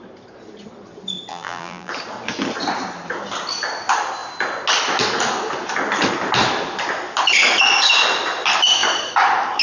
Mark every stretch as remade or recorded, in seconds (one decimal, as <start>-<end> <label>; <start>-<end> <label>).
0.0-1.3 recorded; 1.3-1.9 remade; 1.9-9.6 recorded